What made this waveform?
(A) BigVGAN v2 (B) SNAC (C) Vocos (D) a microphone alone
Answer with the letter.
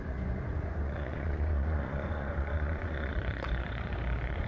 C